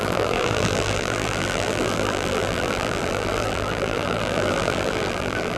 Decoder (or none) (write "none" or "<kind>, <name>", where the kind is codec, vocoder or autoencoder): vocoder, BigVGAN v2